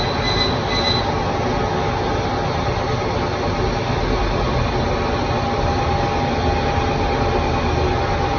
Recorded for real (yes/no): yes